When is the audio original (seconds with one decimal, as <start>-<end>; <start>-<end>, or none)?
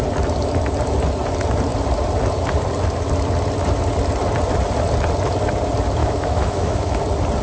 0.0-6.0; 7.0-7.4